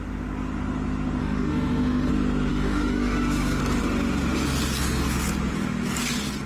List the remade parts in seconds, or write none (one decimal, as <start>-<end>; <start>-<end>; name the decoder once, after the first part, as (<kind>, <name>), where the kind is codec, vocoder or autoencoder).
1.2-2.1 (autoencoder, DAC-VAE); 2.5-3.6